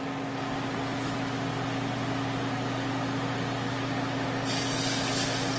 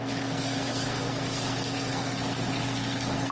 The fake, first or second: second